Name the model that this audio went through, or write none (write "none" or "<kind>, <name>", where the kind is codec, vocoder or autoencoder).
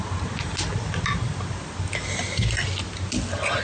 none